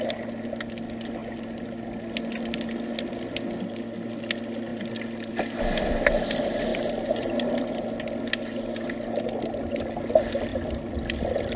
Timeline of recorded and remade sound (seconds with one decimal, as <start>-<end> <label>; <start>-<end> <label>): 0.0-10.5 recorded; 10.5-11.6 remade